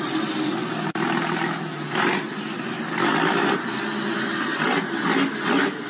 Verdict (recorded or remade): recorded